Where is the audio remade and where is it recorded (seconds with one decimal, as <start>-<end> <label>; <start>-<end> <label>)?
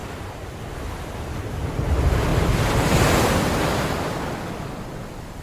0.0-1.7 remade; 1.7-5.4 recorded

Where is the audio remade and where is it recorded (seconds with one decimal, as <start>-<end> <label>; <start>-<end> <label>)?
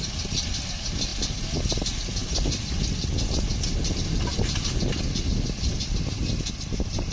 0.0-7.1 recorded